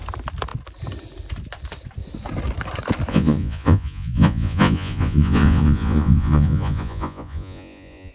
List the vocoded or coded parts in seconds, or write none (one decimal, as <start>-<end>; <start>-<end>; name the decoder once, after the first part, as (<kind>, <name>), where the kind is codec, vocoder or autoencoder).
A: 3.1-8.1 (vocoder, Vocos)